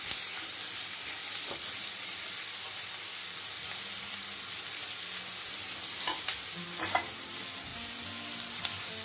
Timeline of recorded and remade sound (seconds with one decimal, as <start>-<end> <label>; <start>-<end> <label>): 0.0-9.0 recorded